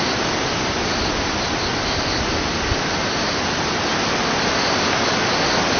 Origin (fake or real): real